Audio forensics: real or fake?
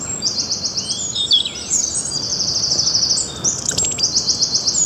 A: fake